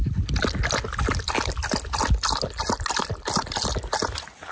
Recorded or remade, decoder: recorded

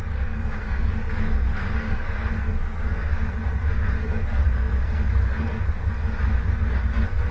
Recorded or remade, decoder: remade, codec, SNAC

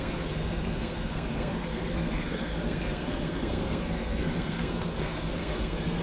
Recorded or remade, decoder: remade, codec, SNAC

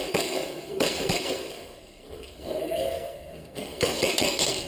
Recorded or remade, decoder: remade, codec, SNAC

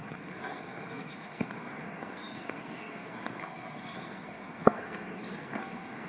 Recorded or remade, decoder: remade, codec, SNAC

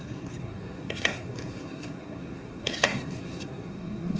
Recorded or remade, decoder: remade, codec, SNAC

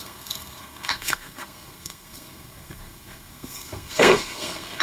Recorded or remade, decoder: remade, codec, SNAC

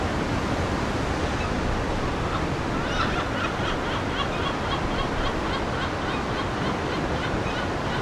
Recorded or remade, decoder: recorded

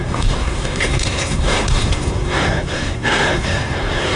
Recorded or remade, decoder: remade, codec, SNAC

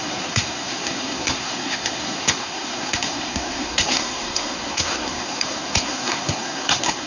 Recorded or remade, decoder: remade, codec, SNAC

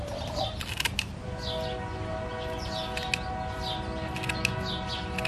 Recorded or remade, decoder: recorded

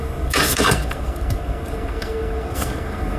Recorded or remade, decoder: remade, codec, SNAC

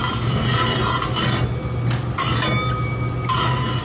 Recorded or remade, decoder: recorded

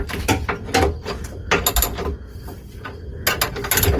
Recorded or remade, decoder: recorded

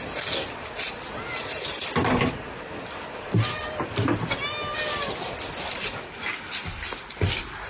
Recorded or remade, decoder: recorded